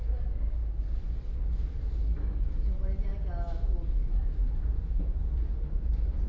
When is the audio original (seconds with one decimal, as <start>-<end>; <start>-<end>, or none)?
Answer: 0.0-6.3